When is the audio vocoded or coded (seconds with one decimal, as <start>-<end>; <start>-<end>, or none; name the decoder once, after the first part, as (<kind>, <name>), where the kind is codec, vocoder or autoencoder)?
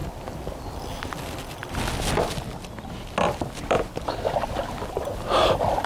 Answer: none